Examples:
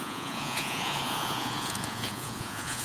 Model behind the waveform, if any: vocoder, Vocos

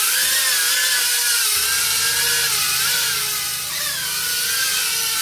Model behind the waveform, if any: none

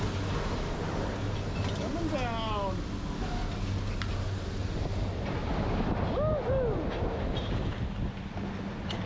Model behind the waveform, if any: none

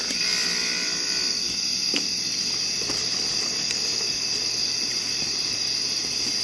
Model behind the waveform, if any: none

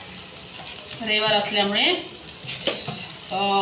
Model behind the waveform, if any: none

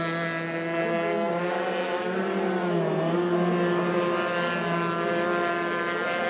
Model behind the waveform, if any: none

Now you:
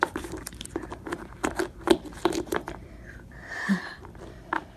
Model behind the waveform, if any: vocoder, BigVGAN v2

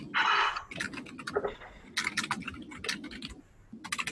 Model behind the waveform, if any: none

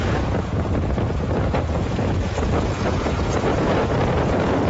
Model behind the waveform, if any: vocoder, Vocos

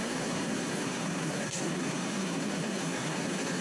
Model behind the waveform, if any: codec, SNAC